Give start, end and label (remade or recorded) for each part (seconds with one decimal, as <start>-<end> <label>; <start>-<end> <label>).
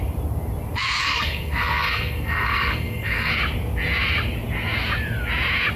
0.0-1.0 recorded; 1.0-3.3 remade; 3.3-5.8 recorded